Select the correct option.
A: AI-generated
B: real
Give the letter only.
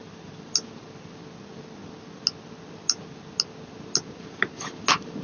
B